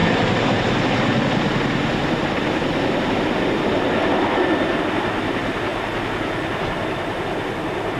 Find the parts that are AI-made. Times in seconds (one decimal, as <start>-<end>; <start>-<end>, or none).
none

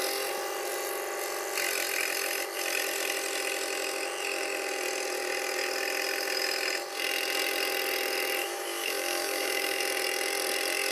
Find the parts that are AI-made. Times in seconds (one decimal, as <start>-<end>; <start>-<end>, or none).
8.4-9.8

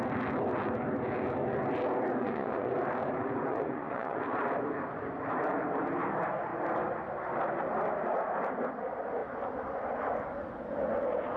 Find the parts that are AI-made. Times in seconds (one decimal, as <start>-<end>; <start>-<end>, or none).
2.2-2.7; 3.5-4.2

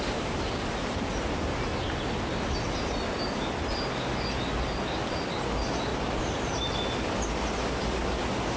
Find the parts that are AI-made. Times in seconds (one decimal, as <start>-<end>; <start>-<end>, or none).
5.9-6.7

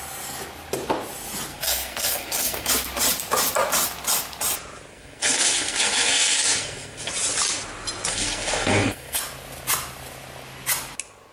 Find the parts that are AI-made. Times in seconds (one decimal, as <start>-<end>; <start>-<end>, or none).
1.5-2.7; 4.9-7.1; 8.1-9.2

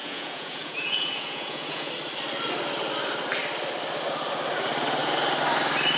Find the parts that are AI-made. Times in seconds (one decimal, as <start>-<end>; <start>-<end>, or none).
0.0-1.9

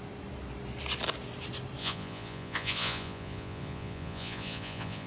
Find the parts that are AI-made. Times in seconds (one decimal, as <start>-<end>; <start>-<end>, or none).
1.8-5.1

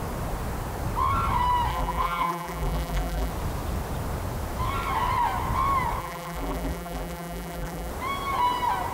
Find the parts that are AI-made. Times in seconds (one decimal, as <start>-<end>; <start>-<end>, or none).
1.7-3.3; 6.0-7.9